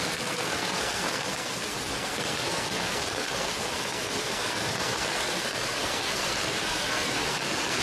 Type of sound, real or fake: fake